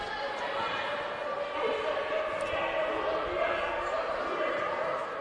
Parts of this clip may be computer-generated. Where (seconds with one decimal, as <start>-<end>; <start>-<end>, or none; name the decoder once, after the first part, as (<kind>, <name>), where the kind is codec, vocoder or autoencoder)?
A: none